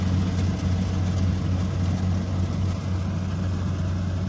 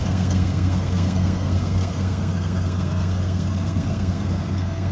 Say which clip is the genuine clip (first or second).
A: first